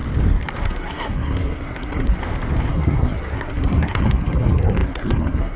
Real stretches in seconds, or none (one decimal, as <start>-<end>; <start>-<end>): 0.0-0.6; 2.2-2.7